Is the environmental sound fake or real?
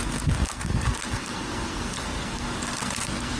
fake